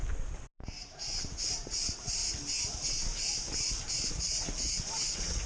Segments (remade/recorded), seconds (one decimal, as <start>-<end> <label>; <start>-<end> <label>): 0.0-0.8 recorded; 0.8-2.2 remade; 2.2-4.1 recorded; 4.1-5.5 remade